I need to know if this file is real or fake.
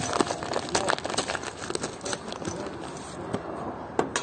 real